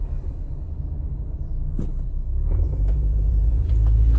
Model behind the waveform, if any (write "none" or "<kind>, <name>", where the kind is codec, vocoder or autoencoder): vocoder, BigVGAN v2